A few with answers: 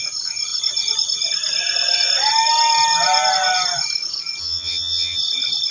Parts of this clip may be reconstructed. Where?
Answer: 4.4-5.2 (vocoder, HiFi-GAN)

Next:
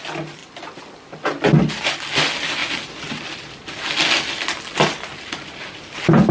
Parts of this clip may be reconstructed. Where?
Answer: none

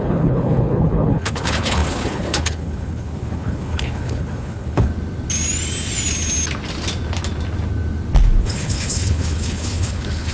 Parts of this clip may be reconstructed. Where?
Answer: 0.0-4.9 (codec, HILCodec); 8.4-10.3

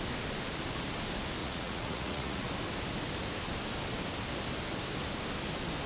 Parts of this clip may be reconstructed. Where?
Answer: 1.4-2.5 (vocoder, Vocos)

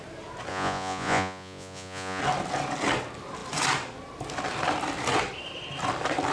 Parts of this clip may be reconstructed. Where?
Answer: 0.5-2.2 (vocoder, Vocos)